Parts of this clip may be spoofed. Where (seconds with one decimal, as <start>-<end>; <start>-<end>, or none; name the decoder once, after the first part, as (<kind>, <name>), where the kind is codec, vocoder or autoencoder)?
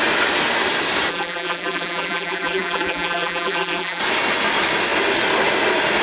1.1-4.0 (vocoder, BigVGAN v2)